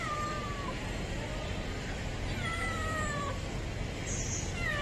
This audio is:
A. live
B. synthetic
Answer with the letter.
B